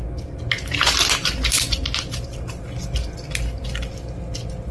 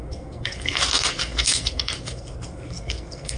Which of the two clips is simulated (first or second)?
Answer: second